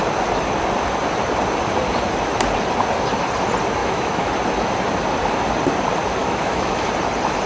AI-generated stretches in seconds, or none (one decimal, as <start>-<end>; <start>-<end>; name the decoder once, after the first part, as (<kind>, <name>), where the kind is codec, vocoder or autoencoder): 3.8-4.3 (autoencoder, DAC-VAE); 6.2-6.9